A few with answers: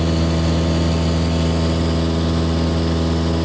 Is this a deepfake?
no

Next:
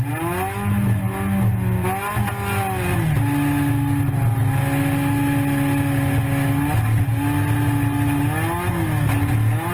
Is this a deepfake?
no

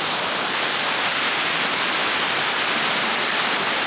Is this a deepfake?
no